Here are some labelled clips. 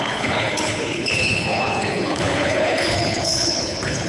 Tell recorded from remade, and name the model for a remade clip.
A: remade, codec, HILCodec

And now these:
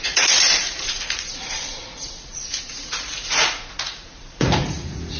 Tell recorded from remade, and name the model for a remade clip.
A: remade, vocoder, Vocos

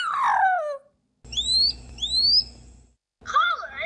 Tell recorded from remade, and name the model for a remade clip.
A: recorded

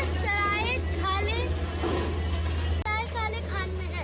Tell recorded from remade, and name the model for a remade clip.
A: recorded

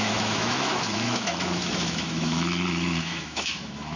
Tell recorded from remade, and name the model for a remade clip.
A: remade, autoencoder, DAC-VAE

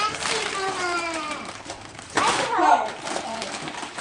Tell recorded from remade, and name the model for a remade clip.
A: remade, vocoder, BigVGAN v2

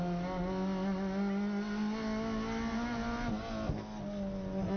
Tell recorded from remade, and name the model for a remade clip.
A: recorded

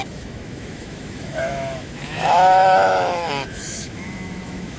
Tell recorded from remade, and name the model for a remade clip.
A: remade, autoencoder, DAC-VAE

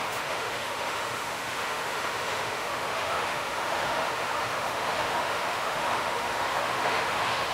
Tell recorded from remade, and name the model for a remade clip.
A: remade, autoencoder, DAC-VAE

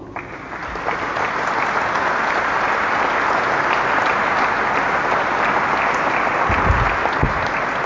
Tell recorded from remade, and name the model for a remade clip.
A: recorded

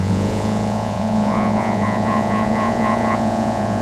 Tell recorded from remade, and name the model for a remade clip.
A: remade, vocoder, Vocos